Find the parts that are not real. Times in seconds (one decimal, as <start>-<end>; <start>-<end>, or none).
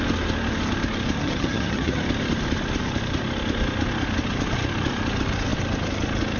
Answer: 1.2-2.0